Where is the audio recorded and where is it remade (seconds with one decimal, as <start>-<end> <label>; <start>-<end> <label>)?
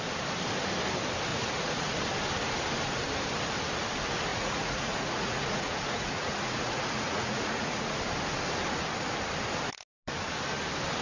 0.0-1.3 recorded; 1.3-1.9 remade; 1.9-4.3 recorded; 4.3-7.8 remade; 7.8-11.0 recorded